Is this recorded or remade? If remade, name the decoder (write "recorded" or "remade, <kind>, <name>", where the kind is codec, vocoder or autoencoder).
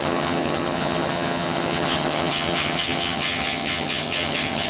remade, vocoder, HiFi-GAN